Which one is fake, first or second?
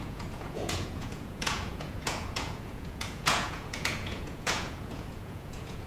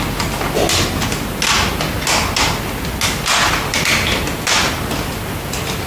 first